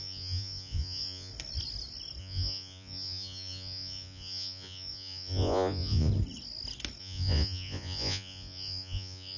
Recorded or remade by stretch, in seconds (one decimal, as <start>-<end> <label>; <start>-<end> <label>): 0.0-1.3 remade; 1.3-2.2 recorded; 2.2-6.1 remade; 6.1-7.0 recorded; 7.0-9.4 remade